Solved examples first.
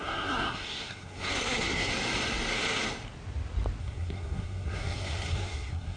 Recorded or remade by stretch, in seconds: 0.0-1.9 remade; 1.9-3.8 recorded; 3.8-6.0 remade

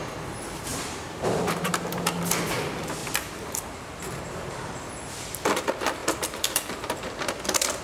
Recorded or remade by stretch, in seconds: 0.0-0.7 recorded; 0.7-2.2 remade; 2.2-3.0 recorded; 3.0-4.9 remade; 4.9-6.0 recorded; 6.0-6.6 remade; 6.6-7.8 recorded

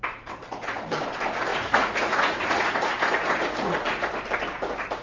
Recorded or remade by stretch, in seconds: 0.0-1.5 recorded; 1.5-2.7 remade; 2.7-3.6 recorded; 3.6-4.1 remade; 4.1-5.0 recorded

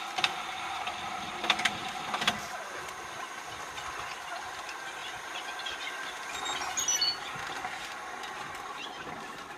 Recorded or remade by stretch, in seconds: 0.0-5.0 recorded; 5.0-6.0 remade; 6.0-9.6 recorded

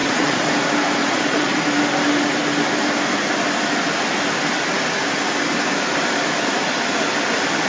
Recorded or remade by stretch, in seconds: 0.0-0.5 remade; 0.5-1.0 recorded; 1.0-1.6 remade; 1.6-7.7 recorded

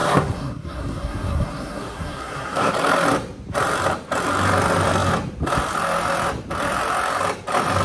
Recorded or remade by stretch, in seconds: 0.0-2.7 remade; 2.7-7.8 recorded